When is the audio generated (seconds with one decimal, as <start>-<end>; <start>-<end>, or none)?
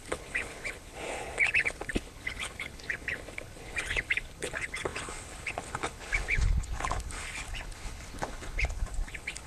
0.0-9.5